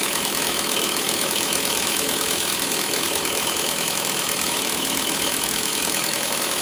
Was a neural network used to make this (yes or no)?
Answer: yes